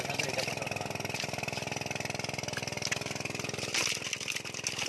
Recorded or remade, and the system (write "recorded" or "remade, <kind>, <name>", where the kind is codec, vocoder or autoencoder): recorded